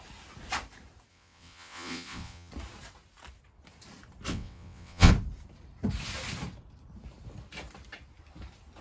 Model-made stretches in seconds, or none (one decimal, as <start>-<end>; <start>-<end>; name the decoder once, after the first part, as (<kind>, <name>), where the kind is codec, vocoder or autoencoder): 1.1-2.5 (vocoder, WaveNeXt); 4.3-5.1